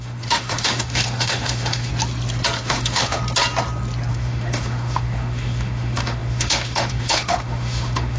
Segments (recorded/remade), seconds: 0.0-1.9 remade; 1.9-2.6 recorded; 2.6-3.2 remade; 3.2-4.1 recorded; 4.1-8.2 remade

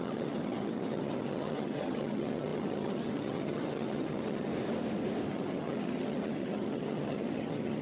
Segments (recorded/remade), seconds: 0.0-4.5 remade; 4.5-5.3 recorded; 5.3-7.8 remade

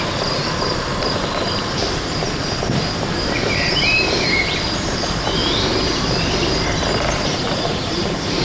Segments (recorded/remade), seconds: 0.0-5.4 remade; 5.4-6.9 recorded; 6.9-8.4 remade

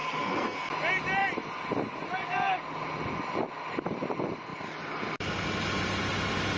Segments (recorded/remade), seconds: 0.0-0.6 remade; 0.6-6.6 recorded

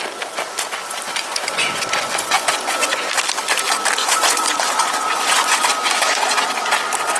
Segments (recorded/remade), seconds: 0.0-1.1 recorded; 1.1-3.1 remade; 3.1-4.0 recorded; 4.0-6.5 remade; 6.5-7.2 recorded

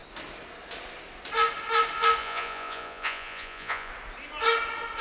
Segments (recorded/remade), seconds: 0.0-2.2 recorded; 2.2-3.9 remade; 3.9-5.0 recorded

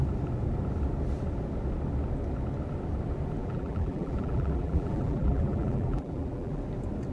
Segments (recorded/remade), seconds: 0.0-3.4 recorded; 3.4-6.6 remade; 6.6-7.1 recorded

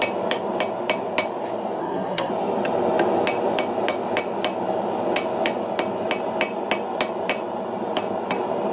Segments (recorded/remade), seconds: 0.0-1.8 recorded; 1.8-2.3 remade; 2.3-8.7 recorded